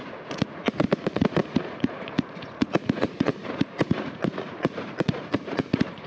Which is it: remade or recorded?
remade